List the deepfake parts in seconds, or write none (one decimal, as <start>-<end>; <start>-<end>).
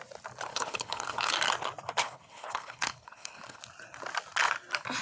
0.5-1.3; 2.0-3.6